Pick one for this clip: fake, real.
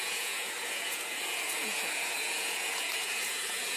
fake